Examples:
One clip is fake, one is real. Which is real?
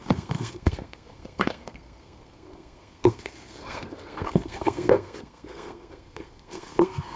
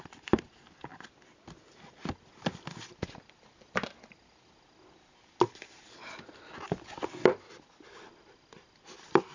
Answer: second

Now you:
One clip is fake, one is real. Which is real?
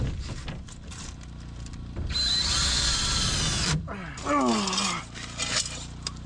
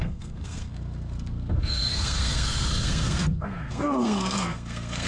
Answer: first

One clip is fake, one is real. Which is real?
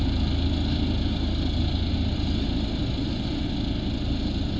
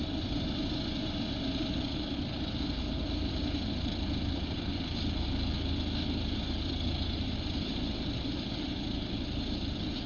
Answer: first